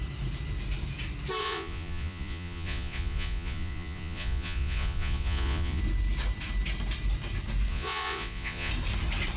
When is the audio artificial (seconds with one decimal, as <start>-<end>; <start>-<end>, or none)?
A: 1.4-5.8; 7.7-8.7